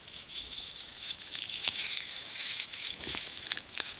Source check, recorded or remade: remade